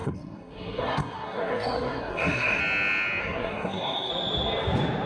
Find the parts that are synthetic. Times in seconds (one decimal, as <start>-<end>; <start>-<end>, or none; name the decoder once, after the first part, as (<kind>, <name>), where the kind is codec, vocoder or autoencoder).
0.0-2.6 (codec, SNAC); 3.2-4.1